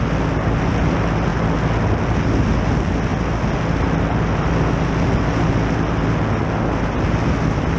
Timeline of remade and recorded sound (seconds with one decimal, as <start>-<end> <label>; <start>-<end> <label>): 0.0-7.8 recorded